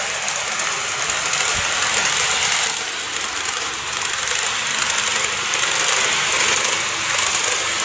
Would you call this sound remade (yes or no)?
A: no